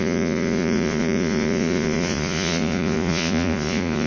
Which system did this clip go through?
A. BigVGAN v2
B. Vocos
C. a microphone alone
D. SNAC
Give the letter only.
B